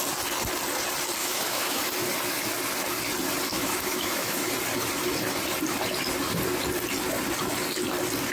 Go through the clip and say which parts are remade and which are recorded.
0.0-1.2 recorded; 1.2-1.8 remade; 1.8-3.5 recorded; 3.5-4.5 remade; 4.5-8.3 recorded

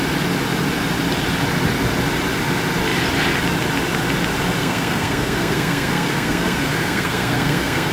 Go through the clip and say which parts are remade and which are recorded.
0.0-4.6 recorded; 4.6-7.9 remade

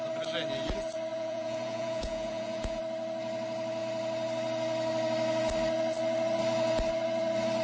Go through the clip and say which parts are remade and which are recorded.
0.0-1.1 recorded; 1.1-2.8 remade; 2.8-7.6 recorded

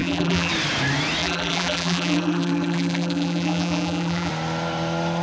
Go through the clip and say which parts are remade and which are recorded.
0.0-0.5 remade; 0.5-1.2 recorded; 1.2-4.3 remade; 4.3-5.2 recorded